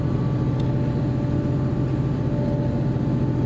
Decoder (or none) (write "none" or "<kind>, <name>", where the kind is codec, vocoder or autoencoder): none